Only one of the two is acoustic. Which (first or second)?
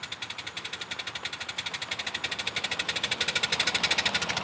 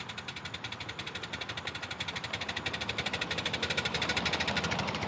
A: first